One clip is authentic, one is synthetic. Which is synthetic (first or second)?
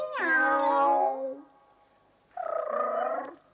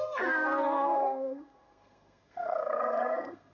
second